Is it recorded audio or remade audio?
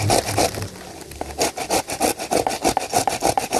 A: recorded